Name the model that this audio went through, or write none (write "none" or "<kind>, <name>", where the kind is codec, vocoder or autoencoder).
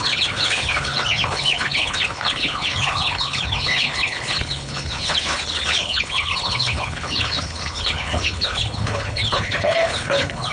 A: codec, HILCodec